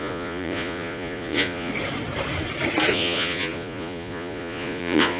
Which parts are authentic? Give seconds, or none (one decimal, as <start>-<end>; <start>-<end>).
1.7-2.9